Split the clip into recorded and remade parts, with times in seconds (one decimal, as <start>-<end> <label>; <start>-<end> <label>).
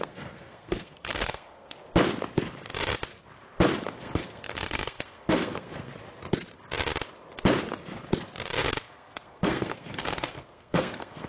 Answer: 0.0-1.8 remade; 1.8-4.0 recorded; 4.0-5.9 remade; 5.9-8.8 recorded; 8.8-11.3 remade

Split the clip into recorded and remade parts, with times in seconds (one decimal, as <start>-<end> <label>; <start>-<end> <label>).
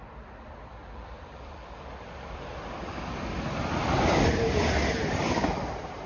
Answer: 0.0-0.8 recorded; 0.8-4.4 remade; 4.4-6.1 recorded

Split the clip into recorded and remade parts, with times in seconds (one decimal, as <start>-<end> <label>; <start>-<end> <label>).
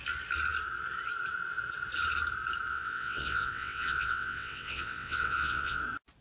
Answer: 0.0-2.7 recorded; 2.7-5.8 remade; 5.8-6.2 recorded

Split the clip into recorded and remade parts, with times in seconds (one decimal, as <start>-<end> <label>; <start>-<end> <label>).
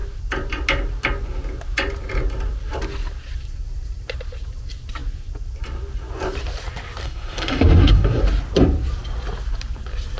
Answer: 0.0-7.0 recorded; 7.0-8.2 remade; 8.2-10.2 recorded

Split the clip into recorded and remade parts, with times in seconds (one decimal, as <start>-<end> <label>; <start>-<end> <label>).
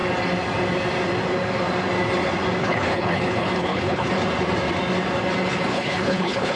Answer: 0.0-2.6 recorded; 2.6-4.1 remade; 4.1-5.7 recorded; 5.7-6.6 remade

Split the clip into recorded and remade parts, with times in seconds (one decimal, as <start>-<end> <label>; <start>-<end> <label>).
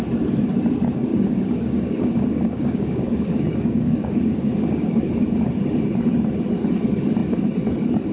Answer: 0.0-1.1 recorded; 1.1-5.0 remade; 5.0-8.1 recorded